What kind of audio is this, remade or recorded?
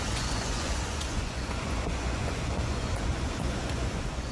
remade